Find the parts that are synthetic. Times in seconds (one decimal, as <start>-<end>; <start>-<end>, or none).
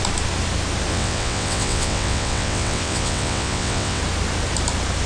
0.9-4.0